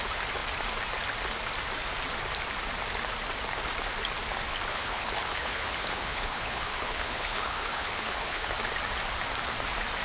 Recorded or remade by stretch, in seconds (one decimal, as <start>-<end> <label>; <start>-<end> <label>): 0.0-4.7 recorded; 4.7-8.5 remade; 8.5-10.0 recorded